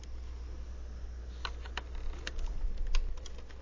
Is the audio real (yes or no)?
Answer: yes